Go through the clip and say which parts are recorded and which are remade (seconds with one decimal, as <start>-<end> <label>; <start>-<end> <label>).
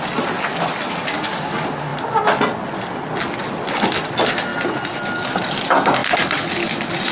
0.0-7.1 recorded